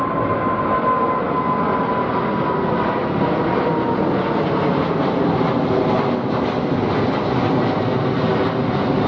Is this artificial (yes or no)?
no